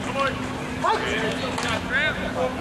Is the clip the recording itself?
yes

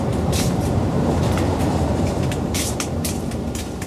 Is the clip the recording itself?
no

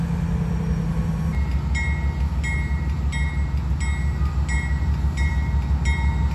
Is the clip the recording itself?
yes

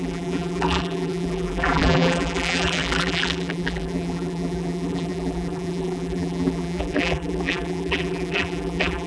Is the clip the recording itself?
no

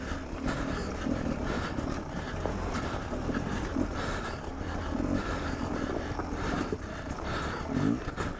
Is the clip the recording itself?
yes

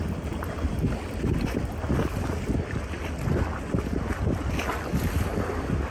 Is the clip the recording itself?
yes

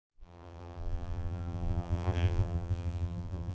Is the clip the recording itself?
no